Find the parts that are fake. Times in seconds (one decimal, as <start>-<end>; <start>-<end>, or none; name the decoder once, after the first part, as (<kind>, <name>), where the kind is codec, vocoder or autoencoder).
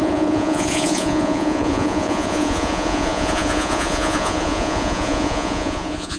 0.0-6.2 (vocoder, Vocos)